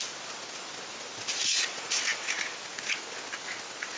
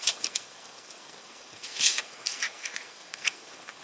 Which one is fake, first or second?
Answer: second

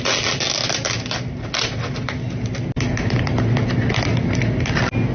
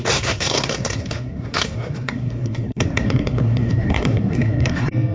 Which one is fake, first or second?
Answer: second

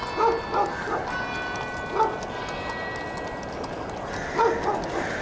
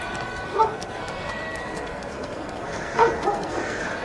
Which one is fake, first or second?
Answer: second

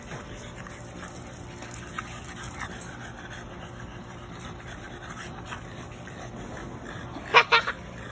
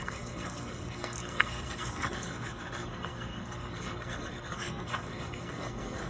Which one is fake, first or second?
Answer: second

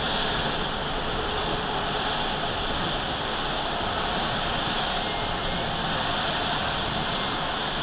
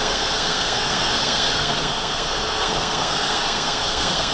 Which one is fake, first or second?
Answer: second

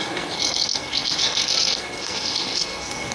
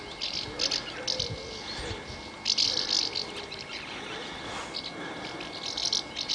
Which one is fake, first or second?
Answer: first